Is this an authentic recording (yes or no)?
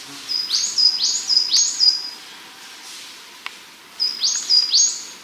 yes